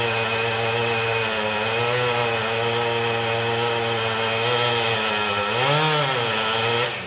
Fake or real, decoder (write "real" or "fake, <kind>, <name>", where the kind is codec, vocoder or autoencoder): real